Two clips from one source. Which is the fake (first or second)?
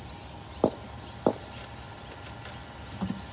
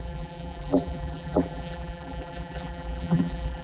second